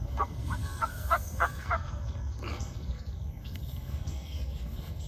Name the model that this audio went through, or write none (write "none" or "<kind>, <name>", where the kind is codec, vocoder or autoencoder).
codec, SNAC